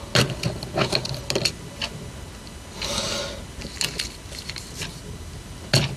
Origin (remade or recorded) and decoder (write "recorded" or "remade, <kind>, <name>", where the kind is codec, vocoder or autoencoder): recorded